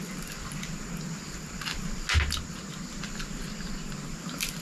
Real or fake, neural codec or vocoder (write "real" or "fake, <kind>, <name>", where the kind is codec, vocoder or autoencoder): real